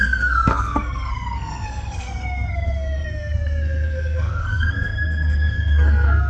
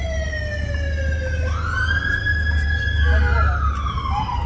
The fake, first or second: first